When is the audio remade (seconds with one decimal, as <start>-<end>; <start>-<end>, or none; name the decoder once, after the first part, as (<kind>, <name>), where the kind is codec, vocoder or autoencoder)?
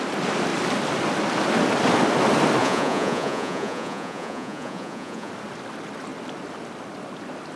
2.6-5.3 (vocoder, Vocos)